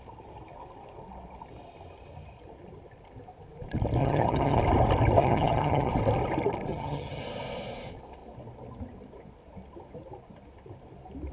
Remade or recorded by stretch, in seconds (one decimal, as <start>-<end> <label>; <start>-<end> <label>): 0.0-4.0 recorded; 4.0-4.6 remade; 4.6-5.2 recorded; 5.2-5.9 remade; 5.9-6.7 recorded; 6.7-7.2 remade; 7.2-11.3 recorded